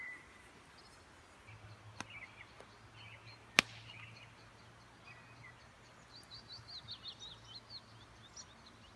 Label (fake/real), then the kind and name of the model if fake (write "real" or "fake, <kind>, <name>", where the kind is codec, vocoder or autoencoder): real